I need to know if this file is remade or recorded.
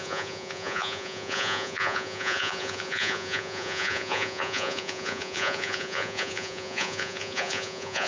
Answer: remade